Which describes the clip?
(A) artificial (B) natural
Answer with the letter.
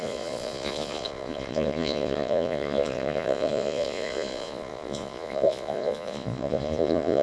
A